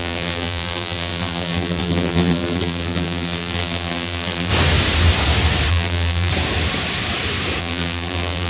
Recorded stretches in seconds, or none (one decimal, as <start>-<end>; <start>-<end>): 4.5-5.7; 6.3-7.6